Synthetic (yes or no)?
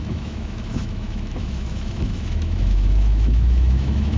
yes